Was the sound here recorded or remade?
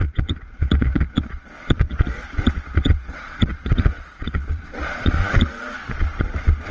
remade